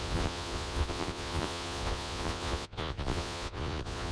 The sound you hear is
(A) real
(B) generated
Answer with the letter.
B